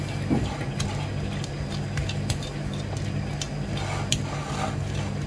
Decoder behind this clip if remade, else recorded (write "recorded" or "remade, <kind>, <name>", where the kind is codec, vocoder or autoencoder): recorded